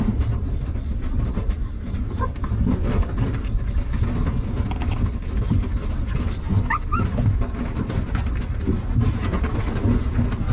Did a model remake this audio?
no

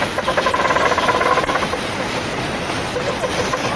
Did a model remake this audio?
no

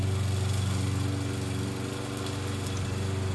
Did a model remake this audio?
no